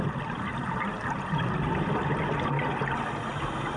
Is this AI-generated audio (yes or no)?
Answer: no